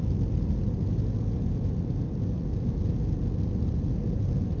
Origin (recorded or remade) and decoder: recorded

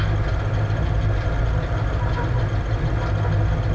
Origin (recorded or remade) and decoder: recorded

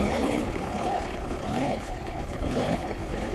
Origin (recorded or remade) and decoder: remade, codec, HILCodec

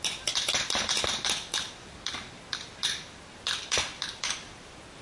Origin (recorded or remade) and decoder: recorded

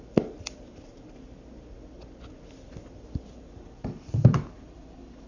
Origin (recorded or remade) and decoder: recorded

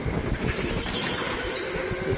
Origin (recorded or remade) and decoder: recorded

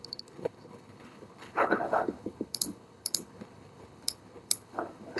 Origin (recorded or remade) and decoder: remade, codec, HILCodec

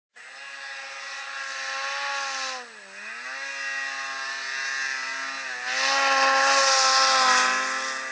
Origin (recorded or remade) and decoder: recorded